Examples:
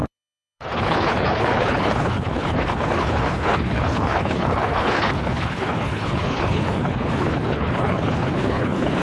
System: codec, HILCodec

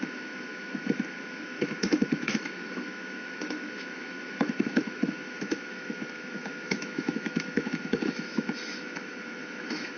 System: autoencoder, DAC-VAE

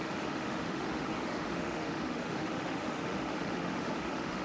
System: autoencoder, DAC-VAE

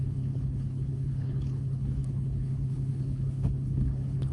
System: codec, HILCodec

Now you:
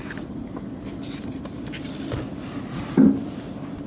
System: none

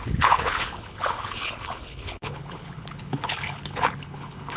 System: codec, HILCodec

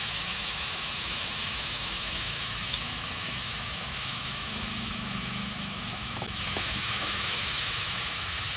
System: autoencoder, DAC-VAE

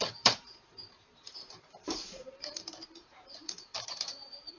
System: vocoder, BigVGAN v2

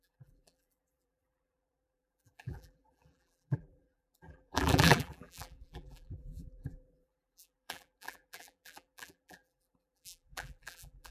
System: vocoder, BigVGAN v2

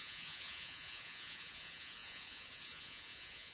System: vocoder, Vocos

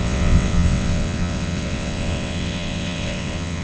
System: vocoder, WaveNeXt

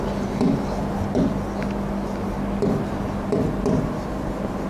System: none